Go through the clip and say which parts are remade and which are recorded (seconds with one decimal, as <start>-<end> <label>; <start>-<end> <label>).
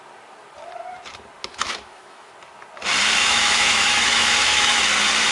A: 0.0-1.5 recorded; 1.5-2.3 remade; 2.3-3.2 recorded; 3.2-4.8 remade; 4.8-5.3 recorded